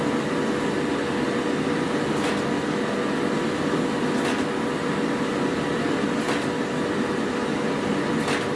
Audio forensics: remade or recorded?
recorded